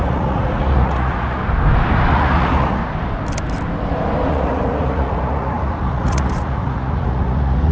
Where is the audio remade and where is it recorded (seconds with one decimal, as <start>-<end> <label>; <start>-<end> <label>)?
0.0-1.4 remade; 1.4-2.1 recorded; 2.1-2.8 remade; 2.8-4.3 recorded; 4.3-7.7 remade